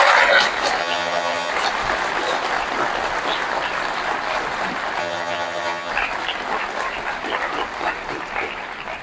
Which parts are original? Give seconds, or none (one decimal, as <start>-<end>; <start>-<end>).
0.0-0.8; 1.5-5.0; 5.9-9.0